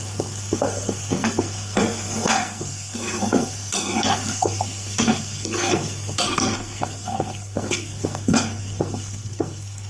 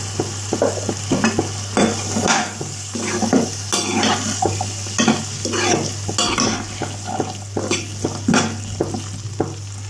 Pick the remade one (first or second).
first